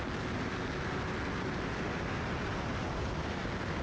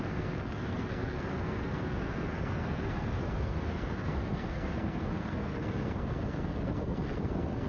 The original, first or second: first